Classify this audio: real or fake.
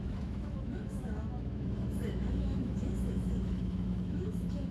fake